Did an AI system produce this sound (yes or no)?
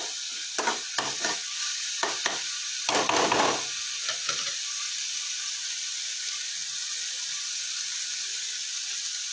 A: no